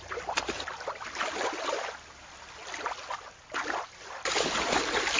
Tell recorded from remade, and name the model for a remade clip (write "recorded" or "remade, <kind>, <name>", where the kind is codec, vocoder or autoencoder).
recorded